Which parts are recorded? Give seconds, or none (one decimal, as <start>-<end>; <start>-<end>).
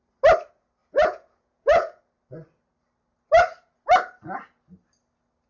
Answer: 0.0-0.8; 2.0-5.5